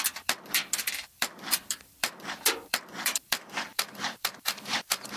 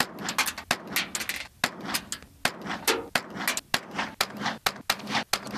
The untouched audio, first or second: second